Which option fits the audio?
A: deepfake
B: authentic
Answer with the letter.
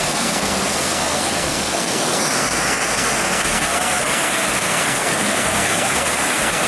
A